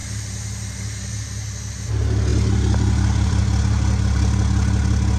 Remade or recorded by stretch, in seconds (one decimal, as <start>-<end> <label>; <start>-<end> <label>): 0.0-2.3 recorded; 2.3-3.4 remade; 3.4-5.2 recorded

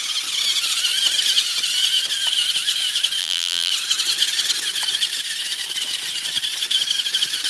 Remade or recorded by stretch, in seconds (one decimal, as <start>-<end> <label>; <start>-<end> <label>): 0.0-3.2 recorded; 3.2-3.7 remade; 3.7-7.5 recorded

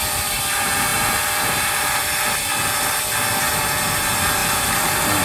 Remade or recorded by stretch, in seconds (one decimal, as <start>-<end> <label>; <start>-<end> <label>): 0.0-0.9 recorded; 0.9-1.7 remade; 1.7-4.4 recorded; 4.4-5.2 remade

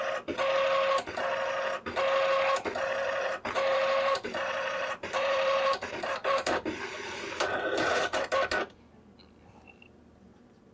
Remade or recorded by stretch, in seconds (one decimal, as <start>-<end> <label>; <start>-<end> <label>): 0.0-3.0 recorded; 3.0-8.3 remade; 8.3-10.7 recorded

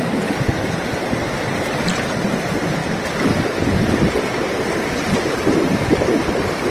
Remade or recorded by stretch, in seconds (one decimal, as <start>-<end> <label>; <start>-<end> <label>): 0.0-2.8 remade; 2.8-4.1 recorded; 4.1-6.7 remade

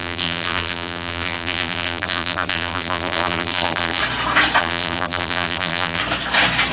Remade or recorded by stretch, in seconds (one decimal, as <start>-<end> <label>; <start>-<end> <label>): 0.0-4.0 remade; 4.0-4.6 recorded; 4.6-6.0 remade; 6.0-6.7 recorded

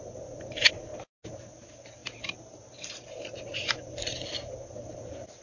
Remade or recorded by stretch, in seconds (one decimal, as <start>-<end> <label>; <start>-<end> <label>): 0.0-2.0 recorded; 2.0-5.4 remade